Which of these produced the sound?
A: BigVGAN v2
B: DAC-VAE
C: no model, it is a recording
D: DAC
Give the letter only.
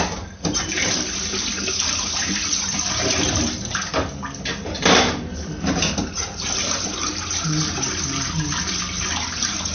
A